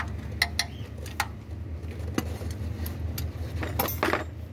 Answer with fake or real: real